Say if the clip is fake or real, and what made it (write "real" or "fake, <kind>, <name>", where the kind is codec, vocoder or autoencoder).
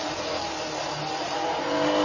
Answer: real